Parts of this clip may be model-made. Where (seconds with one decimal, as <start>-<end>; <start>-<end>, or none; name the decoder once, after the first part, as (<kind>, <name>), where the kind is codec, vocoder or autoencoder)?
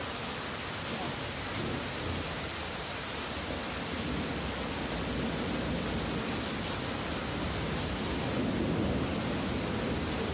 0.0-3.6 (vocoder, BigVGAN v2); 7.7-10.3